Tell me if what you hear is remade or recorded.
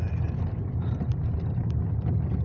recorded